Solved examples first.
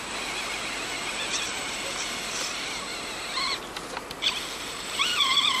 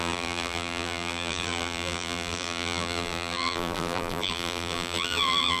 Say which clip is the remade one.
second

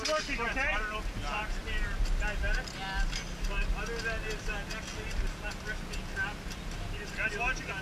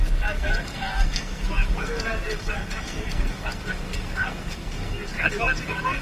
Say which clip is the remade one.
second